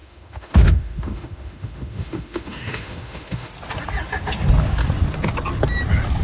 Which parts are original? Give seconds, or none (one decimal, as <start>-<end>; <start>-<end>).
3.5-6.2